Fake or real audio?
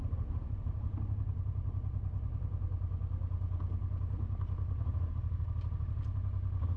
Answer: real